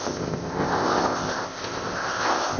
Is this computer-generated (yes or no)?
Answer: yes